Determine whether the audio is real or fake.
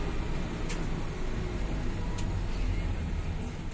real